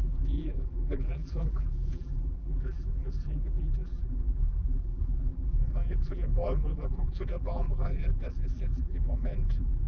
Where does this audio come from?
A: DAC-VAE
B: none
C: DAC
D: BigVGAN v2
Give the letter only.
D